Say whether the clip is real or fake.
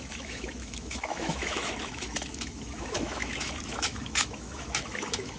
fake